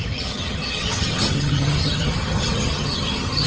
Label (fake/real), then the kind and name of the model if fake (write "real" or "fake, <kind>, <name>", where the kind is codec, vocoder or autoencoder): fake, vocoder, HiFi-GAN